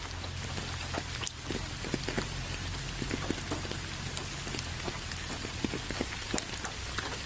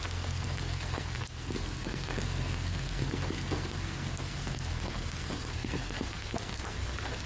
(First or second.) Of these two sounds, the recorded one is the first